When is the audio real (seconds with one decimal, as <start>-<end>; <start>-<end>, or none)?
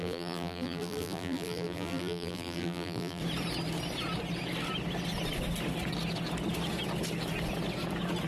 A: 3.2-8.3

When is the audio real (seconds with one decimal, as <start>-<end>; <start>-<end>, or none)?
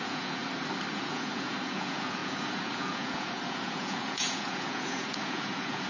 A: 0.4-0.9